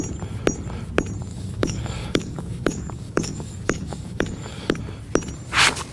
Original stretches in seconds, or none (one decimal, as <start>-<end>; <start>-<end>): 0.0-1.3; 4.8-5.9